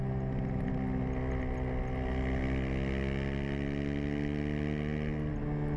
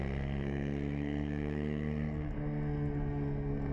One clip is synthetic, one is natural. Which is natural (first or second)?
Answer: first